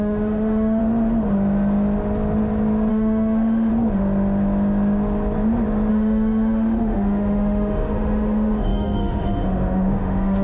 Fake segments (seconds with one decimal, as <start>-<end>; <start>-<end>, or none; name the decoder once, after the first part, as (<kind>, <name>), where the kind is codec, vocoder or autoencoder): 0.0-0.8 (autoencoder, DAC-VAE); 2.9-3.7; 5.9-10.4